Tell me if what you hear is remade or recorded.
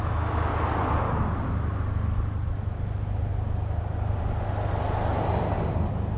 recorded